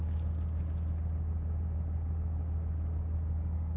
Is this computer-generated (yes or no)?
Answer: no